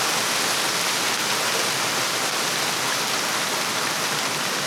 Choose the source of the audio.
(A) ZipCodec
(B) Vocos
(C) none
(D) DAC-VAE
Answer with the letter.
C